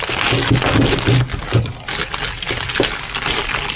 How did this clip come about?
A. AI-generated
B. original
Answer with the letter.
B